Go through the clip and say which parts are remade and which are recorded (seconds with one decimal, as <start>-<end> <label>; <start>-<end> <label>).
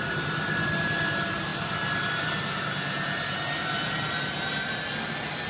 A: 0.0-5.5 recorded